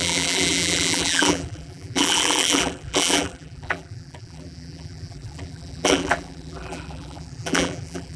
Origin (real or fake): fake